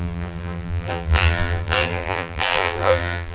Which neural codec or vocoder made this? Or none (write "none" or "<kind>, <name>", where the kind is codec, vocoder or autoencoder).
vocoder, BigVGAN v2